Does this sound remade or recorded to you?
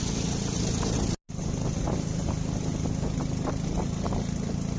recorded